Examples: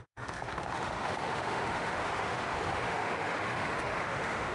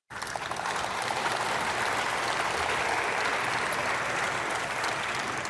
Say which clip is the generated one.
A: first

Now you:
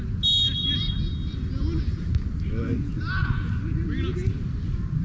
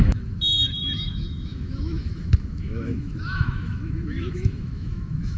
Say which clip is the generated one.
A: second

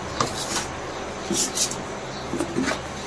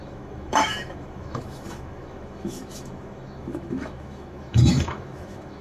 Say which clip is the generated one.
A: second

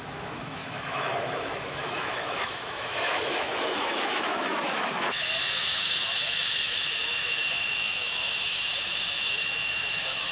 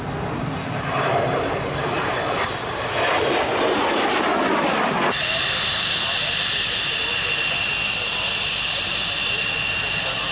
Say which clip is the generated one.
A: first